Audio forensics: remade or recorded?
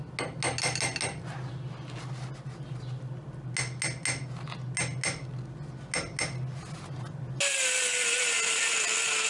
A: recorded